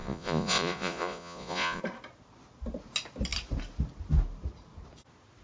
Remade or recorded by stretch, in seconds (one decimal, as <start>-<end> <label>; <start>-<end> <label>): 0.0-1.8 remade; 1.8-5.4 recorded